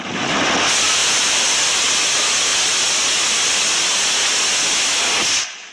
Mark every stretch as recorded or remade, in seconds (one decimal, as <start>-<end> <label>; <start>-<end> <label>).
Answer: 0.0-1.0 recorded; 1.0-2.0 remade; 2.0-5.7 recorded